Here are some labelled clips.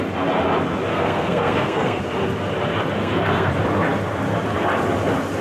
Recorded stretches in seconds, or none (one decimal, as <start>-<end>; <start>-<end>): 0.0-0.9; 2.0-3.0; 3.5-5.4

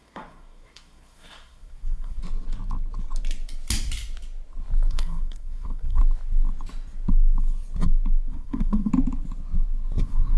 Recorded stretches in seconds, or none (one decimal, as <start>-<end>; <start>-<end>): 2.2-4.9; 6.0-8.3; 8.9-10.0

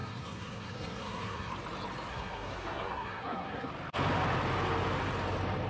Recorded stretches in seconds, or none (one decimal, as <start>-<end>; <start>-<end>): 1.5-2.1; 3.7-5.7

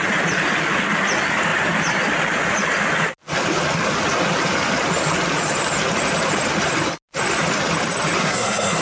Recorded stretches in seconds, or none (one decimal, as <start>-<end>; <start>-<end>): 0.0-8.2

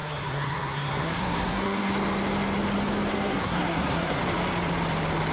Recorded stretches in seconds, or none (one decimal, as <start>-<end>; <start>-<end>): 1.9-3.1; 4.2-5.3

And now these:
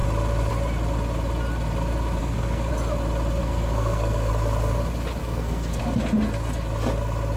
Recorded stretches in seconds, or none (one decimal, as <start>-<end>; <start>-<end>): 0.0-2.2; 2.7-3.4; 4.3-5.2; 5.8-7.4

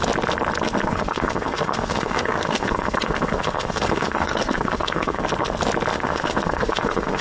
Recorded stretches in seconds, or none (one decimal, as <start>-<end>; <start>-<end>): 0.0-0.9; 5.2-5.9

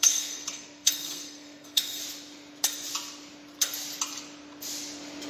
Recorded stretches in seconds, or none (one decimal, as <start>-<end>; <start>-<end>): 2.0-5.3